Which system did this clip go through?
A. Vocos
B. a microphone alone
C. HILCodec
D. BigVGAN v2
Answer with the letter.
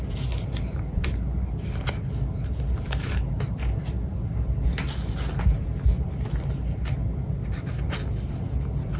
B